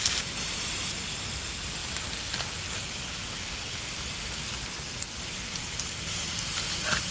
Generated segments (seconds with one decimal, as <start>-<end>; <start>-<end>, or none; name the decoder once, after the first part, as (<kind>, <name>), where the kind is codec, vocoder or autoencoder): none